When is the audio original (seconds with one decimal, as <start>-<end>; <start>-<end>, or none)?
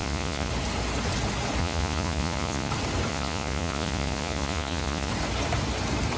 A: 0.5-1.6; 2.7-3.1; 5.1-6.2